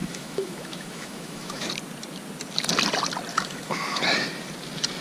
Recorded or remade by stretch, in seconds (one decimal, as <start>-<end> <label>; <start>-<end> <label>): 0.0-1.7 remade; 1.7-3.3 recorded; 3.3-4.0 remade; 4.0-5.0 recorded